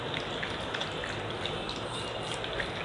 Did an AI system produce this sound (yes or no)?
no